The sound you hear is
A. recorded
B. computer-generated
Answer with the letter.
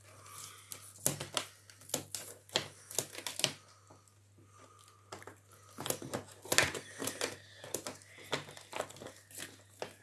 A